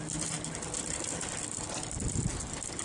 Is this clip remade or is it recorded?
recorded